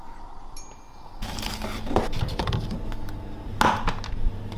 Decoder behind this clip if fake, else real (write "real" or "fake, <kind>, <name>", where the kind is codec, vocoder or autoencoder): real